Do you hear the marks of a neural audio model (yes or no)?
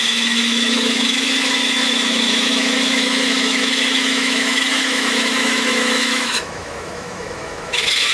yes